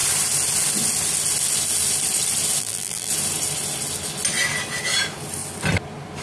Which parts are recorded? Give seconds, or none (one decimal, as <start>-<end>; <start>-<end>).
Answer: 0.0-2.6; 3.1-6.2

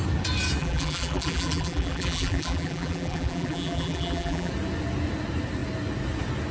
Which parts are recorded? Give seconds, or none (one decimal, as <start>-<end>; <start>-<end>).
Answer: 0.0-0.6; 4.5-6.5

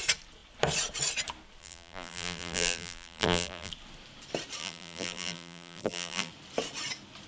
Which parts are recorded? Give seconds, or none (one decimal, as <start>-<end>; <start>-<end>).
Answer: 0.0-1.6; 3.7-4.6; 6.3-7.3

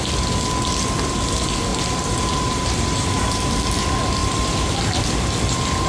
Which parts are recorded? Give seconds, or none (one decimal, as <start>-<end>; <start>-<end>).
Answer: 0.0-1.7; 3.5-4.2; 4.8-5.9

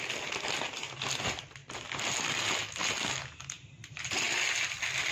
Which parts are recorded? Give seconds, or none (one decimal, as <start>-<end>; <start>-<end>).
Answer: 0.0-5.1

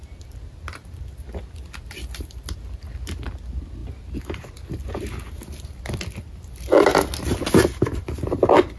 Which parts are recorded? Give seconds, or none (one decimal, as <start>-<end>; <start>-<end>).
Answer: 0.0-8.8

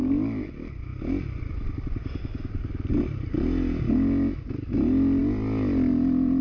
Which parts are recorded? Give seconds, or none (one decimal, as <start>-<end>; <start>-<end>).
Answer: 0.0-6.4

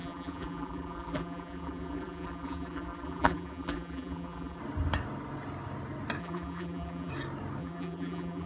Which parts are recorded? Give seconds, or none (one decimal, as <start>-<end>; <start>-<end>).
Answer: 4.6-6.2; 7.1-7.6